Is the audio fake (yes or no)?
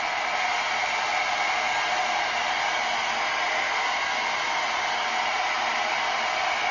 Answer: no